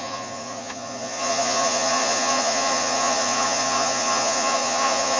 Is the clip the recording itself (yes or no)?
no